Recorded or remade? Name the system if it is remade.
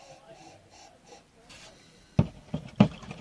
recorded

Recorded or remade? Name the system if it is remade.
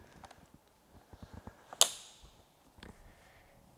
recorded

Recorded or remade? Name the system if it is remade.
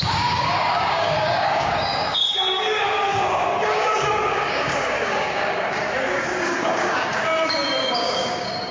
remade, codec, DAC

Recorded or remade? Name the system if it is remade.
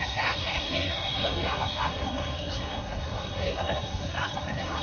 remade, codec, SNAC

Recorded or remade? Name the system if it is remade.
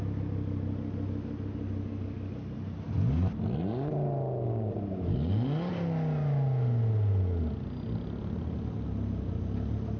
recorded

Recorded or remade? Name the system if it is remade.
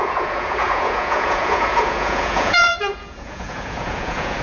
remade, vocoder, Vocos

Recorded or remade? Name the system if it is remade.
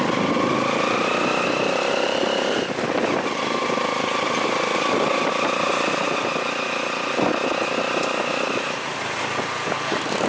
recorded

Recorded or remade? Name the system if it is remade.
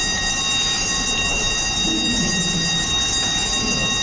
recorded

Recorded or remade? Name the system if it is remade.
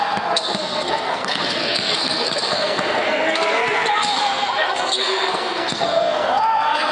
remade, codec, SNAC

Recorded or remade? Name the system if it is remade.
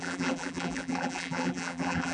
remade, vocoder, BigVGAN v2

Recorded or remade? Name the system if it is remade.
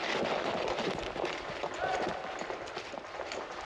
recorded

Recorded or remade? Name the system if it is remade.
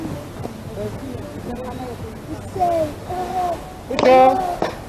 recorded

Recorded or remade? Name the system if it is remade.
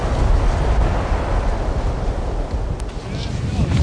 recorded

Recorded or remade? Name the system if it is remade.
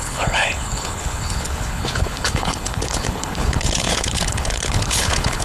remade, codec, HILCodec